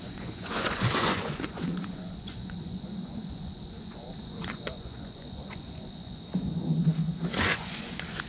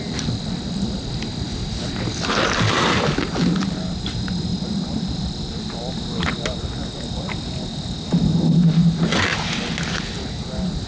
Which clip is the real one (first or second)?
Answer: second